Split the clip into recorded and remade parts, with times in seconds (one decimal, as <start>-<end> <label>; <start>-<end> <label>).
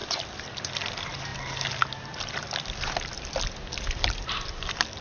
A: 0.0-5.0 recorded